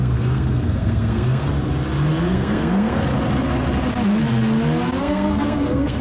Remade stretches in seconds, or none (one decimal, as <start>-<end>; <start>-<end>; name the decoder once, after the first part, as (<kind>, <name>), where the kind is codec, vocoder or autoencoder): 0.0-1.5 (codec, SNAC); 2.3-3.1; 5.0-6.0